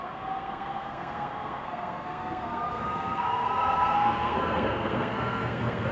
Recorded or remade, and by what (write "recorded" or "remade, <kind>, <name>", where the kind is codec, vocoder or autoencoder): remade, codec, SNAC